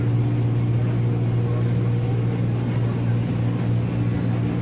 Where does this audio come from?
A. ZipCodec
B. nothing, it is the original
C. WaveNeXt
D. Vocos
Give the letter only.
B